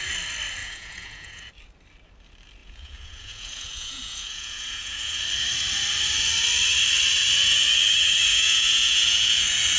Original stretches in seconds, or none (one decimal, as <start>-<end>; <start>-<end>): 0.0-0.6; 1.5-2.6; 5.2-8.3; 9.4-9.8